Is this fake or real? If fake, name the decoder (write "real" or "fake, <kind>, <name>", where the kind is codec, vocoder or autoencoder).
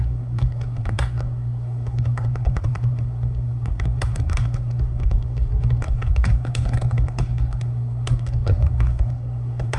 fake, codec, SNAC